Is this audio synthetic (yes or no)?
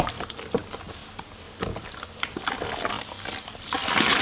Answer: no